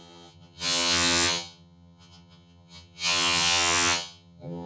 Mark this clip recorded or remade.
remade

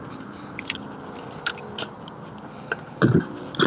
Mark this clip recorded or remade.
recorded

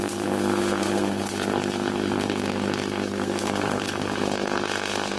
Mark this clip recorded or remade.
remade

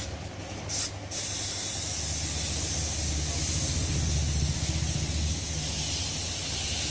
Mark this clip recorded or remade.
recorded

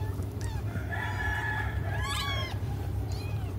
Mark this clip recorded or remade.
remade